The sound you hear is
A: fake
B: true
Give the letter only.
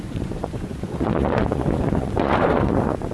A